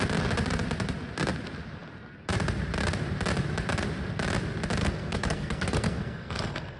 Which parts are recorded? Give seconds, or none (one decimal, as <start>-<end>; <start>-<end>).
0.0-4.8